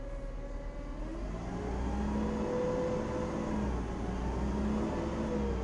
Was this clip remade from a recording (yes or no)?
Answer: no